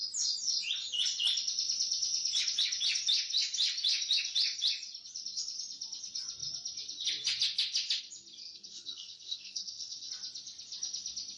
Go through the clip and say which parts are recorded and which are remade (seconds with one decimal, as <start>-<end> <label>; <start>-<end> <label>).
0.0-8.4 recorded; 8.4-10.1 remade; 10.1-11.4 recorded